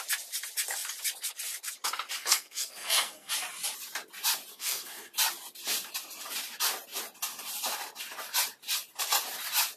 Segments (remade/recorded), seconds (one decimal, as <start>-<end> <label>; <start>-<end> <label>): 0.0-2.2 recorded; 2.2-3.3 remade; 3.3-4.5 recorded; 4.5-5.1 remade; 5.1-9.8 recorded

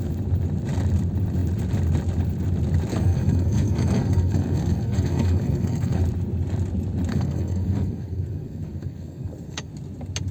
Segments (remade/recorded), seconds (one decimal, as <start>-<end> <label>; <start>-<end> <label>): 0.0-2.9 recorded; 2.9-6.0 remade; 6.0-7.1 recorded; 7.1-9.7 remade; 9.7-10.3 recorded

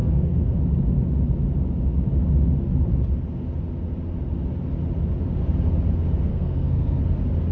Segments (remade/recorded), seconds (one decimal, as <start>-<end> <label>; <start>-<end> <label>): 0.0-0.6 remade; 0.6-6.3 recorded; 6.3-7.0 remade; 7.0-7.5 recorded

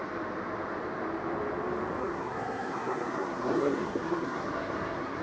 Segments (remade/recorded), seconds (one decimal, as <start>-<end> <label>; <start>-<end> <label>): 0.0-2.0 recorded; 2.0-5.2 remade

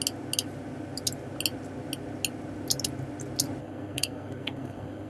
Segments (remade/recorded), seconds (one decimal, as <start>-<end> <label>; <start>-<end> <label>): 0.0-3.6 recorded; 3.6-5.1 remade